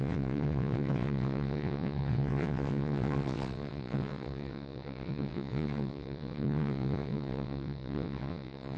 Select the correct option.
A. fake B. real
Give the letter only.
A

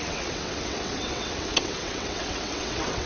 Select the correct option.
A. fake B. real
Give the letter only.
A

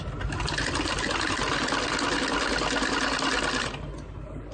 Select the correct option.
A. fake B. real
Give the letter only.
B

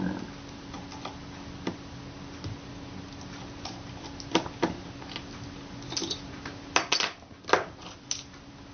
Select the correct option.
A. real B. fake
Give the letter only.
A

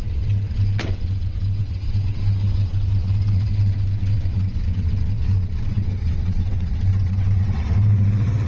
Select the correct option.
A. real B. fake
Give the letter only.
B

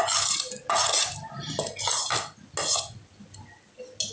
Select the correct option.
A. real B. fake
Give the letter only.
A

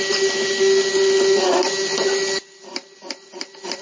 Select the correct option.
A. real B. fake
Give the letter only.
A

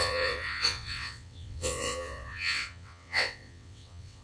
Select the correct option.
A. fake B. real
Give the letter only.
A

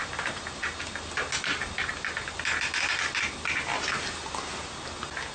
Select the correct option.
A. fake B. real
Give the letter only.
B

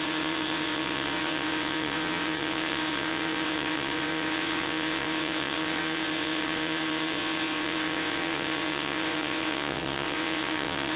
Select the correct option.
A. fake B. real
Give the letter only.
A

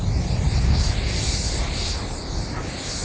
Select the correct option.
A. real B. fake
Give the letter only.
A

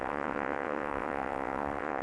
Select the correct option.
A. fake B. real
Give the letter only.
A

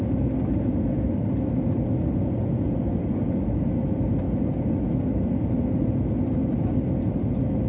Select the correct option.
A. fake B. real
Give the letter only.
B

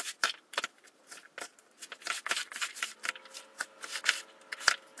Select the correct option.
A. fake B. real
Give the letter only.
B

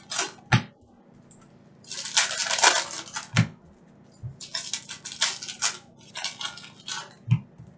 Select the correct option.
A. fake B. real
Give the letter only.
B